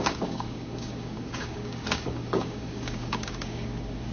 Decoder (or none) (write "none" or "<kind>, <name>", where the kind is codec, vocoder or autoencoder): codec, DAC